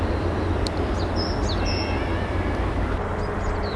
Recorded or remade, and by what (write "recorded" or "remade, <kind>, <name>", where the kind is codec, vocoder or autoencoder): remade, vocoder, BigVGAN v2